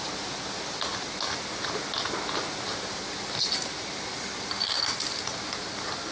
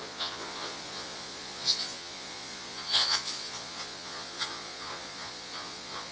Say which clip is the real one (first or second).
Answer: first